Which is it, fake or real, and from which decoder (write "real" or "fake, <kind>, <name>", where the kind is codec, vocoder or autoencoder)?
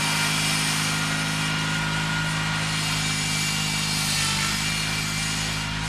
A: real